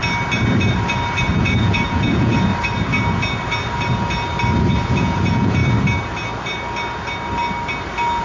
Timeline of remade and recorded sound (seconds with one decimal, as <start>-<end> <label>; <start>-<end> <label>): 0.0-1.4 recorded; 1.4-2.5 remade; 2.5-4.9 recorded; 4.9-5.6 remade; 5.6-8.2 recorded